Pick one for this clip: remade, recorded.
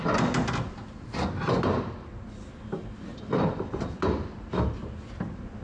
recorded